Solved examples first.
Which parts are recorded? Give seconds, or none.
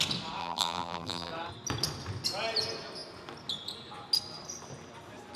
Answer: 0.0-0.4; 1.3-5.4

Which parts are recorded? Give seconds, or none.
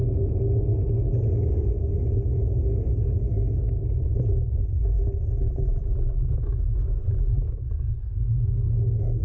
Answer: 0.0-5.4; 6.4-7.0; 7.5-9.2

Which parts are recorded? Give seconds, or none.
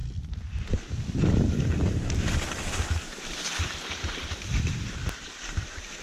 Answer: 0.0-3.6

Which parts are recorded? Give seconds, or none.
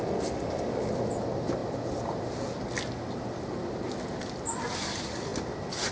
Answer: 0.0-5.9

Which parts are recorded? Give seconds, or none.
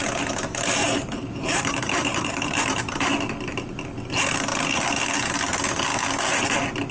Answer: 0.0-0.8; 3.1-6.9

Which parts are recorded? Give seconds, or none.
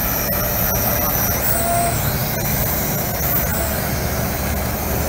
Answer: 0.0-5.1